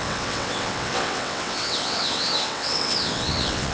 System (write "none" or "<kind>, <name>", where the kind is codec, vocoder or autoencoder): vocoder, WaveNeXt